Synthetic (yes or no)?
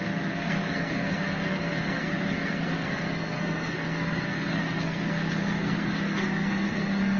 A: yes